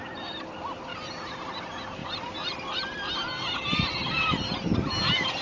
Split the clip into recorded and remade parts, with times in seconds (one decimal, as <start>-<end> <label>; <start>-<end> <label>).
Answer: 0.0-0.9 recorded; 0.9-1.6 remade; 1.6-2.0 recorded; 2.0-5.4 remade